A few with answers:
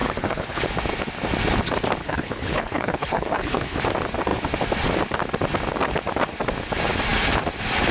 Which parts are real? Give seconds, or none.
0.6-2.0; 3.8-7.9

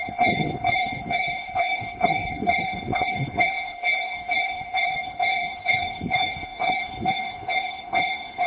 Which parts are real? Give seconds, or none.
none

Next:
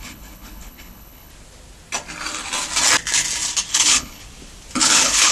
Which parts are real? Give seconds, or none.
1.3-3.7; 4.2-4.8

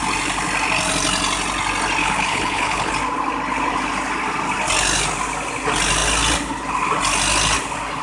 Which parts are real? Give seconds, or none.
0.0-2.0; 2.9-8.0

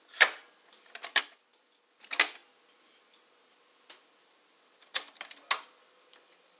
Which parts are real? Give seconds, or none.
0.0-6.6

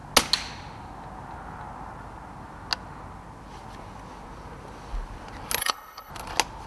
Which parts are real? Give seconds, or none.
0.0-5.6; 6.1-6.7

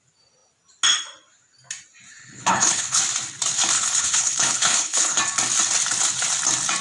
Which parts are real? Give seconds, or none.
0.0-2.2; 3.0-3.8; 5.2-6.8